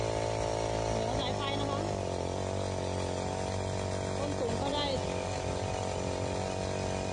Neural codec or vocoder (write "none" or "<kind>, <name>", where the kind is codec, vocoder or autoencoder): none